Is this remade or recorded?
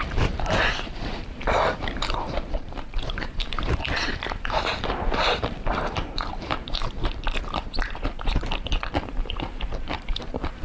remade